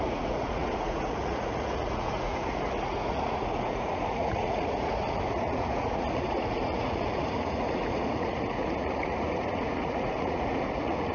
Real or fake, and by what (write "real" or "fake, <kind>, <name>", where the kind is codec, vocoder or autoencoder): fake, vocoder, Vocos